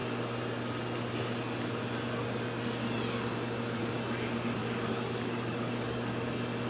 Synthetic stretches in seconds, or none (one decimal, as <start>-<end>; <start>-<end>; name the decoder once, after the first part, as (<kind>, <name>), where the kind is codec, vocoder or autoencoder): 4.6-6.3 (codec, DAC)